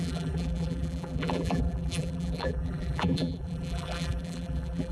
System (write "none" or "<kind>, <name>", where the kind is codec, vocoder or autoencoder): vocoder, BigVGAN v2